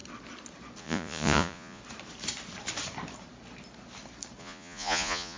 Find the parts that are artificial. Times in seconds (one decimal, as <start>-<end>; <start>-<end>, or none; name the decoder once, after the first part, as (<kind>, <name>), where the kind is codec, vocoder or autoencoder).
0.8-1.8 (vocoder, Vocos); 4.4-5.4